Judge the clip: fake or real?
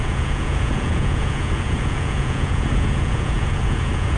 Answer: fake